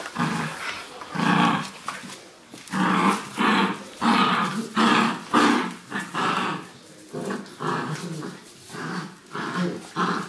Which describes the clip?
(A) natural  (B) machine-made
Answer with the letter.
A